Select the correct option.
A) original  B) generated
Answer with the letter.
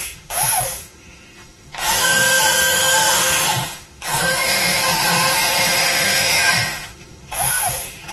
B